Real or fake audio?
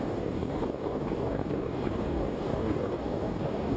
fake